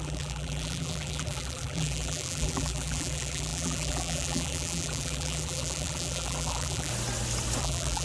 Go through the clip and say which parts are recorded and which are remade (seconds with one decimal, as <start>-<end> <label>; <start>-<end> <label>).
0.0-6.9 remade; 6.9-7.6 recorded; 7.6-8.0 remade